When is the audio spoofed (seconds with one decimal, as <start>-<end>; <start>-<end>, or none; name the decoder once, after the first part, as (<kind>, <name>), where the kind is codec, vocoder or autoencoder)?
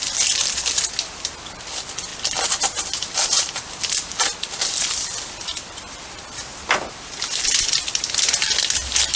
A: 0.0-2.1 (vocoder, BigVGAN v2); 4.2-6.5; 7.1-9.2